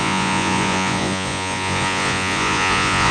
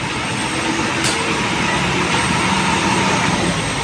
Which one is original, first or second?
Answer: second